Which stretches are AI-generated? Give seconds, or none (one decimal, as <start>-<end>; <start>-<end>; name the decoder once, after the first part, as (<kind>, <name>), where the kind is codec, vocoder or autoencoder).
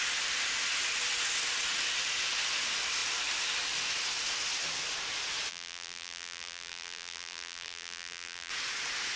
5.5-8.5 (vocoder, BigVGAN v2)